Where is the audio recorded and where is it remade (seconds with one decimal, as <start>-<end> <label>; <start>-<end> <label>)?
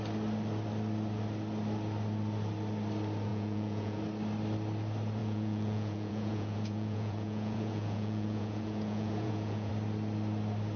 0.0-3.3 recorded; 3.3-4.0 remade; 4.0-5.2 recorded; 5.2-9.7 remade; 9.7-10.8 recorded